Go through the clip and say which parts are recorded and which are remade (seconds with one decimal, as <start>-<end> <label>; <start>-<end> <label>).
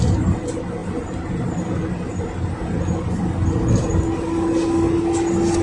0.0-5.6 recorded